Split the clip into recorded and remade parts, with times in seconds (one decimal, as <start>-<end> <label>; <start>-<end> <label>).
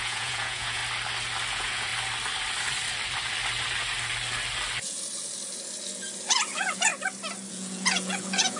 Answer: 0.0-0.8 remade; 0.8-1.5 recorded; 1.5-1.9 remade; 1.9-6.3 recorded; 6.3-6.9 remade; 6.9-7.5 recorded; 7.5-8.6 remade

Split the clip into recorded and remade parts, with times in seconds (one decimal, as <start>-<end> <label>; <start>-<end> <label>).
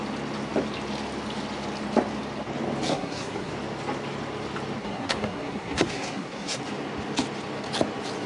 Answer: 0.0-2.9 recorded; 2.9-3.5 remade; 3.5-4.8 recorded; 4.8-6.6 remade; 6.6-8.3 recorded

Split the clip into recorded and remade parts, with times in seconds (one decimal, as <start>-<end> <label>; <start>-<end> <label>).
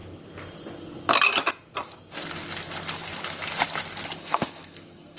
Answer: 0.0-4.2 recorded; 4.2-5.2 remade